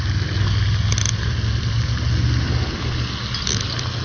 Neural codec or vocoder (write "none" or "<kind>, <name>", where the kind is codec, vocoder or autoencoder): none